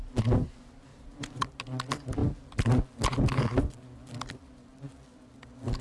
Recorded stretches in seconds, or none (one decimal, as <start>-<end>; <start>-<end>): 0.0-0.9; 1.6-5.8

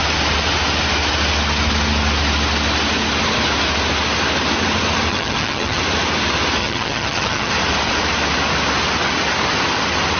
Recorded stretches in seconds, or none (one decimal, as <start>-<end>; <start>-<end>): 0.0-5.1; 5.8-6.6; 7.5-10.2

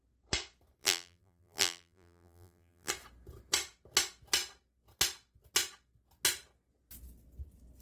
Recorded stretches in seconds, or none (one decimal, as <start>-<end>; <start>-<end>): 0.0-0.8; 2.9-7.8

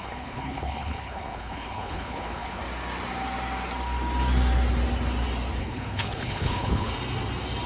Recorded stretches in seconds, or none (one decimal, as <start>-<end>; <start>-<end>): 2.6-5.6; 6.9-7.7

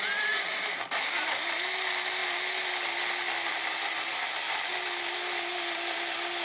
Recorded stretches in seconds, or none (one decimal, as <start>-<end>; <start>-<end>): 0.0-6.4

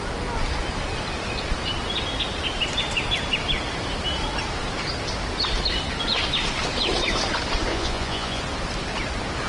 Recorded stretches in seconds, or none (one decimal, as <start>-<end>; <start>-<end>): 0.0-7.7; 8.4-9.5